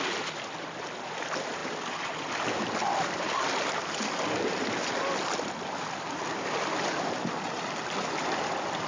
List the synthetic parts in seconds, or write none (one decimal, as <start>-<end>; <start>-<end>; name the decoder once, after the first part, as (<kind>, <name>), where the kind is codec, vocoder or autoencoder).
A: none